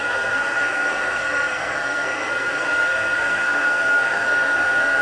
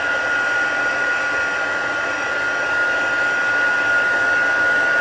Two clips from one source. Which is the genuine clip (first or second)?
second